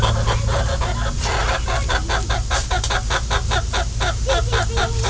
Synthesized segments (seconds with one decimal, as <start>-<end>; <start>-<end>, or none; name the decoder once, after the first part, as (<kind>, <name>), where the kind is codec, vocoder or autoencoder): none